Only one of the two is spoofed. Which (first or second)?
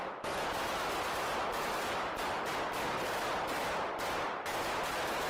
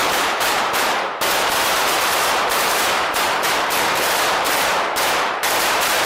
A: second